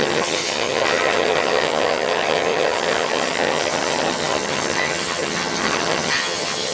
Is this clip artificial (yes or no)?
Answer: yes